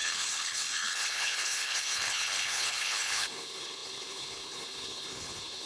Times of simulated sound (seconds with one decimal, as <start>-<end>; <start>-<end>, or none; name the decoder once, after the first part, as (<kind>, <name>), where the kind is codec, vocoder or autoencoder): 0.0-5.7 (codec, HILCodec)